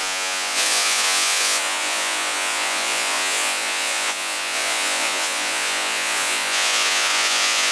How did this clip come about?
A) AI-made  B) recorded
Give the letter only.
A